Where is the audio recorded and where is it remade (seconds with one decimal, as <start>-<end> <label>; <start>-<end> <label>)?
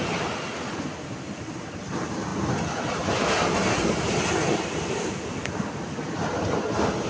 0.0-7.1 recorded